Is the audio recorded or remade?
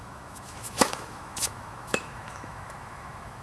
remade